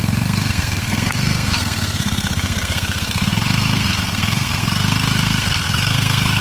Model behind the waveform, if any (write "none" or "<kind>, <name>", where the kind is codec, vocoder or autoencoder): codec, SNAC